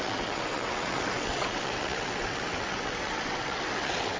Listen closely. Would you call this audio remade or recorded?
remade